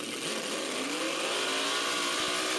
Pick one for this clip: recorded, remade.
recorded